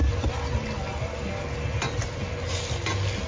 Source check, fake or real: real